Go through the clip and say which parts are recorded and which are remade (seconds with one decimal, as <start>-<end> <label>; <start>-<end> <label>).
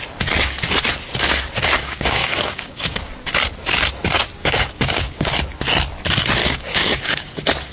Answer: 0.0-1.8 recorded; 1.8-3.1 remade; 3.1-4.4 recorded; 4.4-5.3 remade; 5.3-6.4 recorded; 6.4-7.3 remade; 7.3-7.7 recorded